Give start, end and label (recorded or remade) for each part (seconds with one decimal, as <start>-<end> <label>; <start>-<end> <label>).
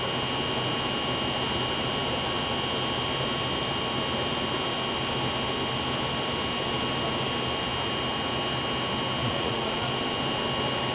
0.0-9.2 recorded; 9.2-9.9 remade; 9.9-10.9 recorded